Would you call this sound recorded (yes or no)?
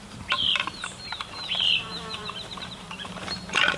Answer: no